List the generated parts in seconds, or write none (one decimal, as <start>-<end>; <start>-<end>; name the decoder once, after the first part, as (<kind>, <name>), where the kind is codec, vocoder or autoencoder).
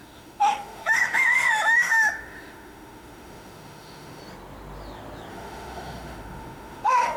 0.0-4.2 (autoencoder, DAC-VAE); 5.3-7.2